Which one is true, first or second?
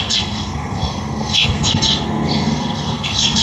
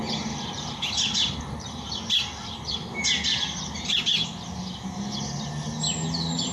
second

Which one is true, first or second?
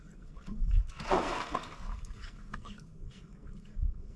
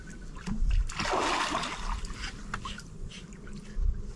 second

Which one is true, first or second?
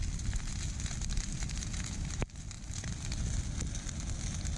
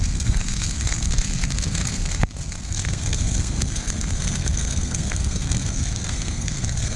first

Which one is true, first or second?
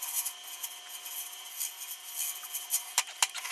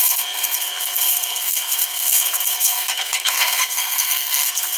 first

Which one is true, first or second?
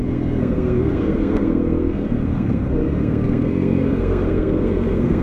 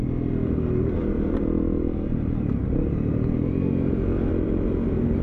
second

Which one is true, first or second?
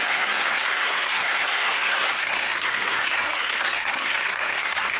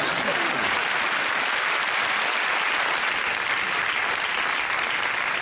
second